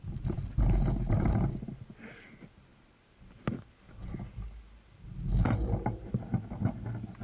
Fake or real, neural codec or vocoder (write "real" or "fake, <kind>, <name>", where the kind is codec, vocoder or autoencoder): real